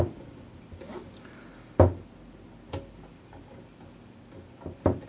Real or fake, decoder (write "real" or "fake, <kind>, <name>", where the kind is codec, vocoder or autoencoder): real